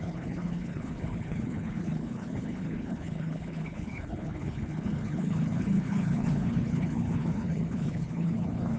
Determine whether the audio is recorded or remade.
remade